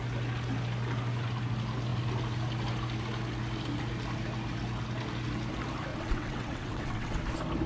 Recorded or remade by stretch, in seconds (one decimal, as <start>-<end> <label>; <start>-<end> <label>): 0.0-5.9 recorded; 5.9-7.2 remade; 7.2-7.7 recorded